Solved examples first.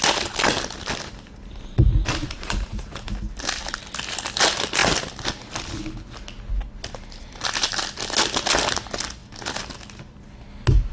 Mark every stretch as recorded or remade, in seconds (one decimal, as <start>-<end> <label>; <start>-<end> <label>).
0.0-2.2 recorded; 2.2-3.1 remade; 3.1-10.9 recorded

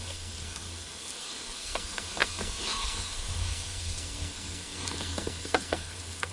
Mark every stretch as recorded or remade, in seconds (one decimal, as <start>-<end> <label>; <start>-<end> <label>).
0.0-6.3 remade

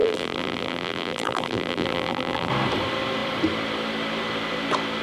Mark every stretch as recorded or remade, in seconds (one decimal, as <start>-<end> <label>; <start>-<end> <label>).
0.0-2.5 remade; 2.5-5.0 recorded

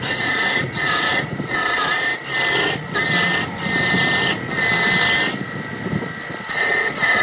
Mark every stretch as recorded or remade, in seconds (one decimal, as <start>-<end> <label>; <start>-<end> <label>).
0.0-2.1 remade; 2.1-6.4 recorded; 6.4-7.2 remade

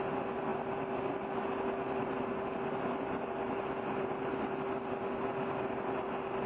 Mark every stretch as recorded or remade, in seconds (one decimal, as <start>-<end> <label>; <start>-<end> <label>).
0.0-6.5 recorded

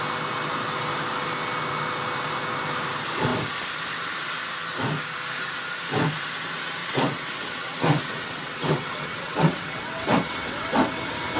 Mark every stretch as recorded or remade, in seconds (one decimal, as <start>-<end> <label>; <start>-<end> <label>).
0.0-6.8 recorded; 6.8-11.0 remade; 11.0-11.4 recorded